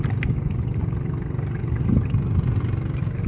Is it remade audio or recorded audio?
recorded